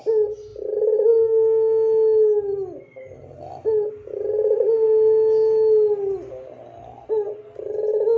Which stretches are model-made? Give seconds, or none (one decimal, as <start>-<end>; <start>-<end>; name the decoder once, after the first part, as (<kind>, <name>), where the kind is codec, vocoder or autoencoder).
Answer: none